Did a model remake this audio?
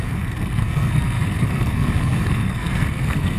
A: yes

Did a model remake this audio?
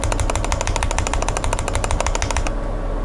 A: no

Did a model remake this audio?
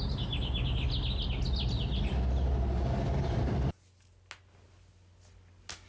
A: no